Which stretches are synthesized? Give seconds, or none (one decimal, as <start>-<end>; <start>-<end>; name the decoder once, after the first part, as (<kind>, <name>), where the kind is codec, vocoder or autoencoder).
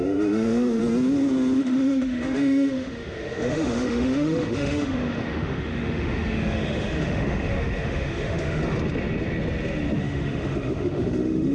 0.0-0.8 (autoencoder, DAC-VAE); 1.6-8.6; 10.0-11.5